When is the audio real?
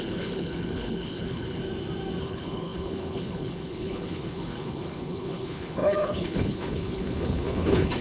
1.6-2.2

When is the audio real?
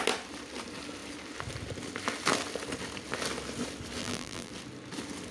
0.0-4.0; 4.5-5.3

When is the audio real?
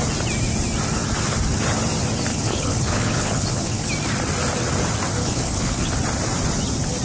0.0-2.3; 3.9-5.2; 5.9-7.0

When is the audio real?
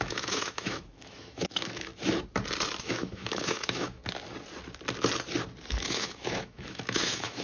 1.9-2.8; 4.0-5.7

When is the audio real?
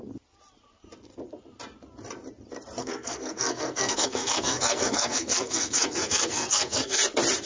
0.0-2.8; 7.0-7.5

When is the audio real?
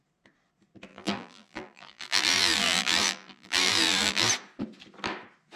0.0-0.9; 4.3-5.6